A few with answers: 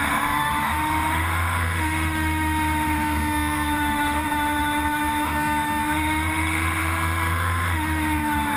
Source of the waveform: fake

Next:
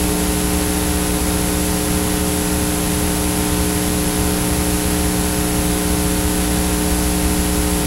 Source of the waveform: real